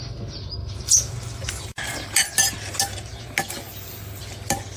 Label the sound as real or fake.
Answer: real